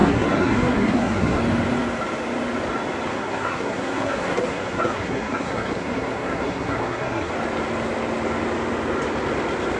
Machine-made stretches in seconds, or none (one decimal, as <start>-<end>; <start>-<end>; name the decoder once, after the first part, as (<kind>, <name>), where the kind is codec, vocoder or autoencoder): 0.0-1.4 (codec, SNAC); 3.1-7.3